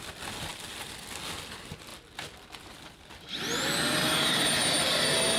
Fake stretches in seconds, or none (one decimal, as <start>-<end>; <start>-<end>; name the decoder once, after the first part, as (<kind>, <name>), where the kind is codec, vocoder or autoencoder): 0.5-1.1 (vocoder, BigVGAN v2)